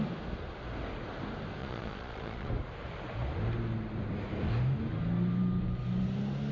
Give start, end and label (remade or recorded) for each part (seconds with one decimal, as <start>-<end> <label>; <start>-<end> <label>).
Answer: 0.0-1.6 recorded; 1.6-2.5 remade; 2.5-6.5 recorded

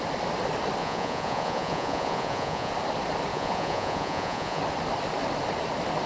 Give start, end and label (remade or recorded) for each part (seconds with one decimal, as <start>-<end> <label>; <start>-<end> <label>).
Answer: 0.0-0.8 recorded; 0.8-2.7 remade; 2.7-3.3 recorded; 3.3-4.6 remade; 4.6-6.1 recorded

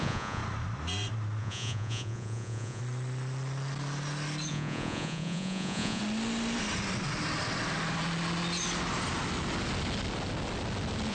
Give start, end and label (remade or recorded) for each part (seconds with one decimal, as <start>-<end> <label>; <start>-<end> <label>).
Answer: 0.0-0.4 remade; 0.4-1.4 recorded; 1.4-2.8 remade; 2.8-4.5 recorded; 4.5-6.0 remade; 6.0-11.1 recorded

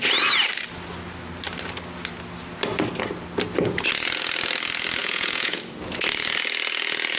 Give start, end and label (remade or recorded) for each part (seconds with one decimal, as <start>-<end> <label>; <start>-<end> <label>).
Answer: 0.0-5.0 recorded; 5.0-5.6 remade; 5.6-7.2 recorded

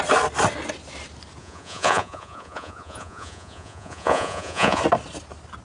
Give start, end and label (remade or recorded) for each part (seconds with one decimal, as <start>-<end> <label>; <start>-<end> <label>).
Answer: 0.0-1.4 recorded; 1.4-4.8 remade; 4.8-5.6 recorded